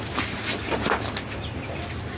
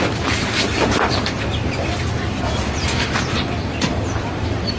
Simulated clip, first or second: second